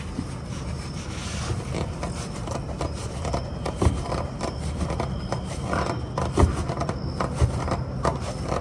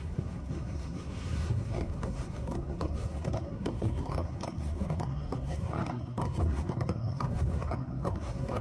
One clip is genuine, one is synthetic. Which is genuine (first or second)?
first